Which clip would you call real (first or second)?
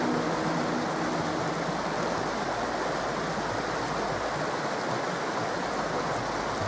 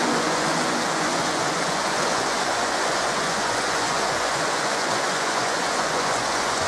first